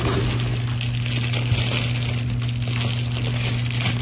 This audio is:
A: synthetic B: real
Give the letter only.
B